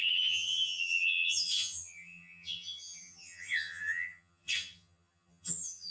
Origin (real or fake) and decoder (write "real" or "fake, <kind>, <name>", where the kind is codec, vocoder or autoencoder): fake, vocoder, HiFi-GAN